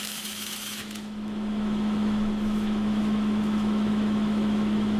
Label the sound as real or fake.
fake